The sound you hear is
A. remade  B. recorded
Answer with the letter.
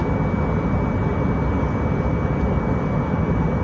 B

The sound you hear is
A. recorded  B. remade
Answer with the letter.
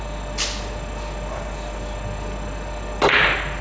A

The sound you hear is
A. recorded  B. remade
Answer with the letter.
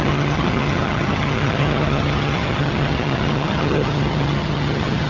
B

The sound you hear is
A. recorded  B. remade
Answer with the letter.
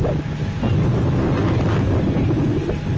A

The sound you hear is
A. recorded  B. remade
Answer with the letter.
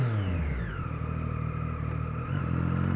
A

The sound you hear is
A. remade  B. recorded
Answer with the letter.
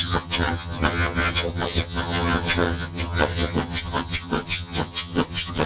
A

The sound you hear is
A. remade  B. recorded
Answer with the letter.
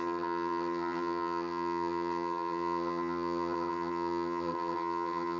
A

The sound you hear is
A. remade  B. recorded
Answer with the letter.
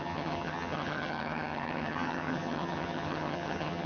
A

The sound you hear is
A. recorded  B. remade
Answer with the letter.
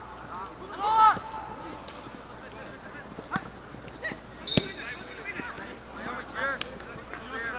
A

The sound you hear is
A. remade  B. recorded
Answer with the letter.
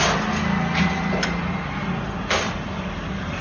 B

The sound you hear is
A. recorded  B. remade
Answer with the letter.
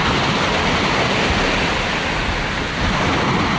A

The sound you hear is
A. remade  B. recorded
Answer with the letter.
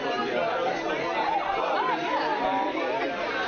B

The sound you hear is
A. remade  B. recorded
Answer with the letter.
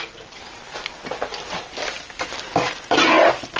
B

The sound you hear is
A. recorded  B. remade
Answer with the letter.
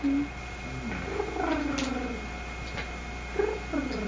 A